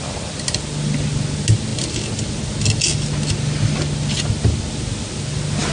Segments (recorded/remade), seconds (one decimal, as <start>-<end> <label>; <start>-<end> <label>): 0.0-5.7 recorded

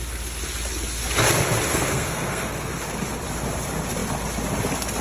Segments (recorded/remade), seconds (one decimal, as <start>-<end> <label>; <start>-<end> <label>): 0.0-1.7 recorded; 1.7-2.7 remade; 2.7-5.0 recorded

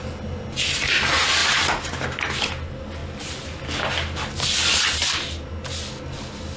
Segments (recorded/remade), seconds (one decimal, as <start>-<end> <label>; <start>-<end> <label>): 0.0-6.6 recorded

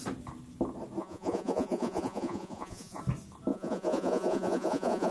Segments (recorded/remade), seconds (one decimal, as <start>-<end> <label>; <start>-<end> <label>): 0.0-1.0 recorded; 1.0-3.0 remade; 3.0-3.5 recorded; 3.5-5.1 remade

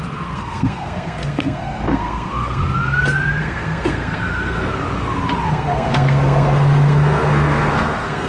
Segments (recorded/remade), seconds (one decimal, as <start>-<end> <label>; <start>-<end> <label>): 0.0-2.6 remade; 2.6-3.4 recorded; 3.4-4.7 remade; 4.7-5.5 recorded; 5.5-8.3 remade

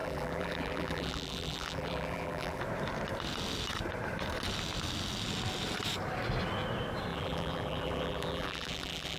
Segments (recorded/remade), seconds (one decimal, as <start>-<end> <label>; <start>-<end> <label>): 0.0-2.6 remade; 2.6-7.1 recorded; 7.1-9.2 remade

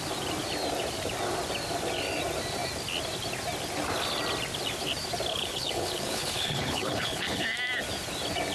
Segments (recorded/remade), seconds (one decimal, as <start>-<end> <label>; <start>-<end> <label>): 0.0-5.3 recorded; 5.3-7.4 remade; 7.4-8.5 recorded